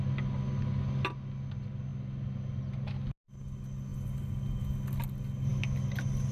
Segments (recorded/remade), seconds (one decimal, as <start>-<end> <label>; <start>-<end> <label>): 0.0-6.3 recorded